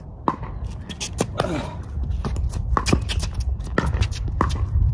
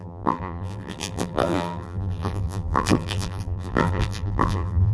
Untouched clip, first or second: first